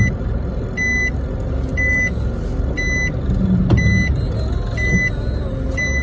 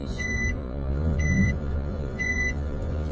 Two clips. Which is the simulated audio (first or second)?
second